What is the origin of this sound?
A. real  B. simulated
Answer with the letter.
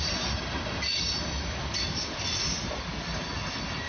A